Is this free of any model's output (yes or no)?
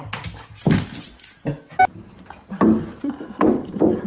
yes